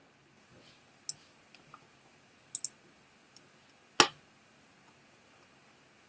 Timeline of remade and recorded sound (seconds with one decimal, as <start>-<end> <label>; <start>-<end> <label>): 0.0-6.1 recorded